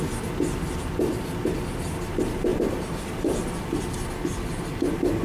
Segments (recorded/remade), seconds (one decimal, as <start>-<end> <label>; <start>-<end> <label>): 0.0-2.5 recorded; 2.5-3.7 remade; 3.7-5.2 recorded